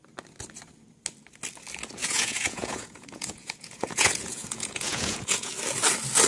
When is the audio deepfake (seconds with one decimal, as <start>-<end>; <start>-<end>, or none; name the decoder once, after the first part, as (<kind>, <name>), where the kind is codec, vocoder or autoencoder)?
2.0-5.5 (vocoder, Vocos)